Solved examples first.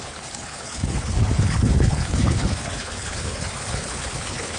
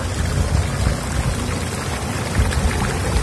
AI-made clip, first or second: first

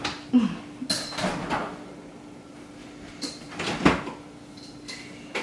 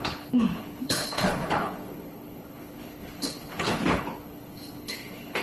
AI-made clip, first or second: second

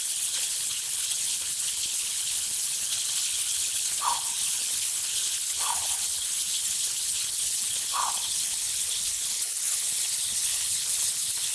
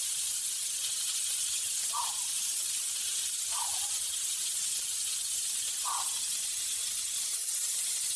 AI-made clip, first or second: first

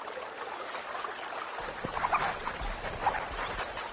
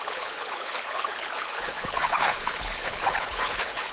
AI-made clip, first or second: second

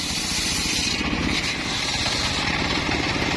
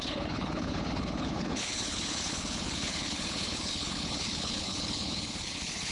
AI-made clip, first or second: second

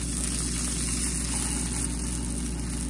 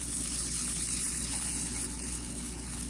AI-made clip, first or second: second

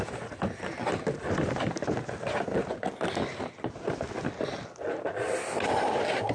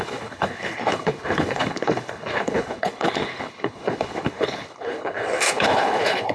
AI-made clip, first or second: second